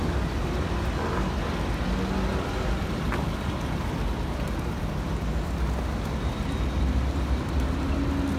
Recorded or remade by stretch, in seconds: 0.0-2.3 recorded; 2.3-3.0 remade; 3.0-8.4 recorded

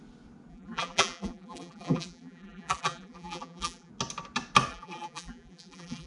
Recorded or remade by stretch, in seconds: 0.0-0.5 recorded; 0.5-3.9 remade; 3.9-4.7 recorded; 4.7-6.1 remade

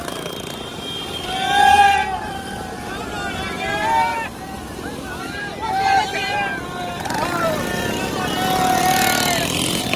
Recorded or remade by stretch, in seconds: 0.0-4.1 recorded; 4.1-6.1 remade; 6.1-10.0 recorded